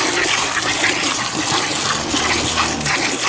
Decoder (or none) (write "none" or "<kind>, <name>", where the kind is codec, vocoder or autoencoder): none